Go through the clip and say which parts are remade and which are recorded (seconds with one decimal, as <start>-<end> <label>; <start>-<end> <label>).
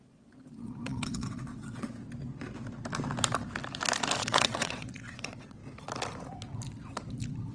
0.0-2.0 remade; 2.0-4.2 recorded; 4.2-5.6 remade; 5.6-7.5 recorded